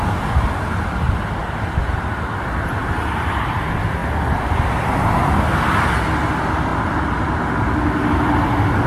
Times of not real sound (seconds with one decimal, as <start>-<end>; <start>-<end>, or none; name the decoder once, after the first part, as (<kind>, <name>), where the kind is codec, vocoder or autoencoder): none